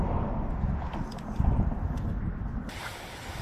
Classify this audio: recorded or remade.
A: recorded